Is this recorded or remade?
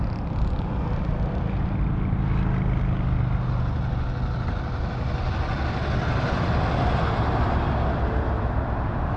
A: recorded